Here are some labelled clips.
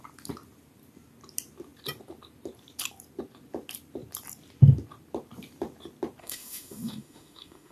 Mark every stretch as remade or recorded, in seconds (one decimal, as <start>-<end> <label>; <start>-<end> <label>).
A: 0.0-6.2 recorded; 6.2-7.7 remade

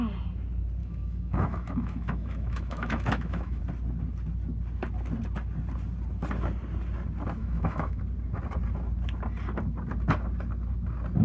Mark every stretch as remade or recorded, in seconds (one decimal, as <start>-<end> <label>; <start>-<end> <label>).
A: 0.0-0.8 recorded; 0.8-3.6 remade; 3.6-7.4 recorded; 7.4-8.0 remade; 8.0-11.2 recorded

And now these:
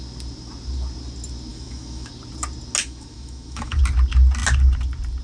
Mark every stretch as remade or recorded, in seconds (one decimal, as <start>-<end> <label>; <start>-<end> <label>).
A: 0.0-1.5 recorded; 1.5-2.1 remade; 2.1-2.8 recorded; 2.8-3.8 remade; 3.8-5.2 recorded

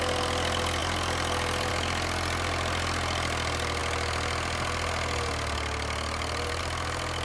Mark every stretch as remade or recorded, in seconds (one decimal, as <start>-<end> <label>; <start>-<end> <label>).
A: 0.0-7.2 recorded

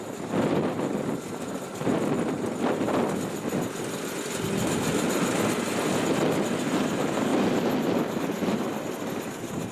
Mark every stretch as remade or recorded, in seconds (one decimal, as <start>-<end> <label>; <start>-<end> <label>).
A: 0.0-9.7 recorded

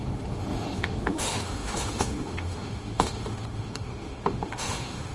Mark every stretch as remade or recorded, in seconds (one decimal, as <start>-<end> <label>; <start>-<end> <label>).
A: 0.0-5.1 remade